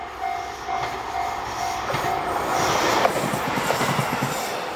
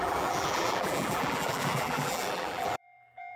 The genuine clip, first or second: first